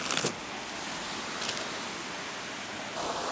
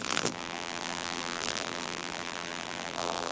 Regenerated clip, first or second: second